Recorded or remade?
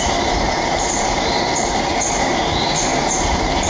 remade